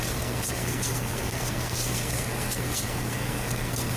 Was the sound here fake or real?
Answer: fake